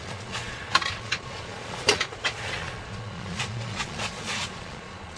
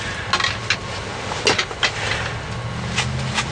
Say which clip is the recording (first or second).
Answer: second